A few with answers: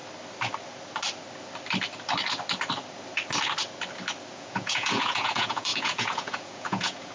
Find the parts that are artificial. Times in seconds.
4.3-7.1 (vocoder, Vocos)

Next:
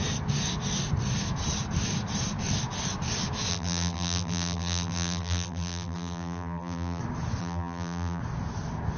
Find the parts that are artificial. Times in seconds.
3.5-7.0 (vocoder, BigVGAN v2); 7.4-8.2